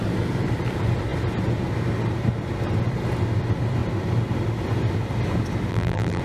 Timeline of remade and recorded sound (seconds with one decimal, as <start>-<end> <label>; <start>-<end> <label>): 0.0-5.7 recorded; 5.7-6.2 remade